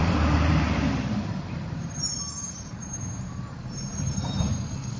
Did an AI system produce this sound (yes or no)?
yes